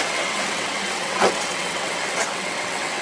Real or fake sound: fake